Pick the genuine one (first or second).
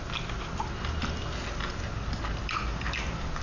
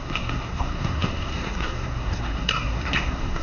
first